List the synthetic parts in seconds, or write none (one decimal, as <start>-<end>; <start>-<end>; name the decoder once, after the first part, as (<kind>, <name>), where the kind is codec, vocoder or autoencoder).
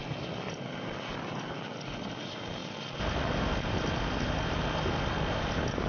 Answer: none